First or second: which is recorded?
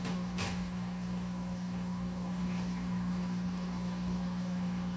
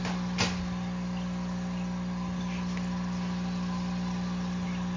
second